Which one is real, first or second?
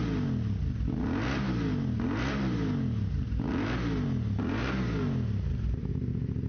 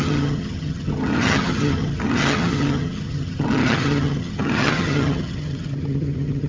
first